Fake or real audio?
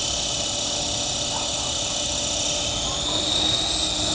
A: real